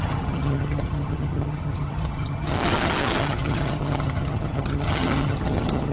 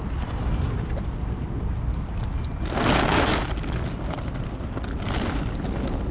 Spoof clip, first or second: first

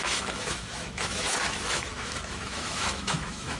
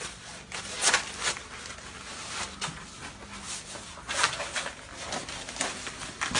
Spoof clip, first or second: first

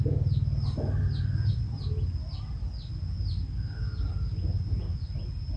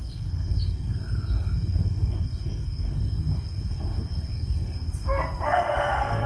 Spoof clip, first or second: second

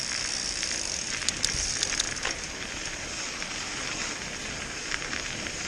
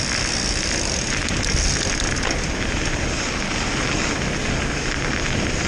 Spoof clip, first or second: first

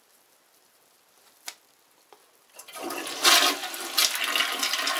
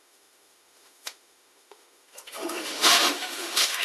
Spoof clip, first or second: second